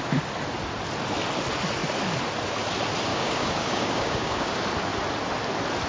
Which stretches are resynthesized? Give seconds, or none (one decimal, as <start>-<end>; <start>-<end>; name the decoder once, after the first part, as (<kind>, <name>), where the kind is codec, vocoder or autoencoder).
3.1-4.5 (codec, DAC)